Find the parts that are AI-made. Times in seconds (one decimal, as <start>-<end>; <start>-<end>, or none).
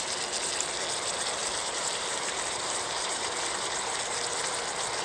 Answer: 1.4-3.3